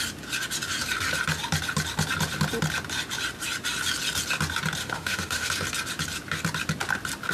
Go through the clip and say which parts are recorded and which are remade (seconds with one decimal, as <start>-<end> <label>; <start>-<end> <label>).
0.0-4.8 recorded; 4.8-5.5 remade; 5.5-7.3 recorded